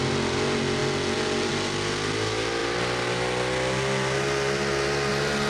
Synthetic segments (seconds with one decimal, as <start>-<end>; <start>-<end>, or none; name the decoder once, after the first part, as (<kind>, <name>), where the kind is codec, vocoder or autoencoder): none